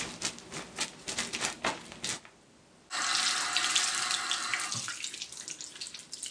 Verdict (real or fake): real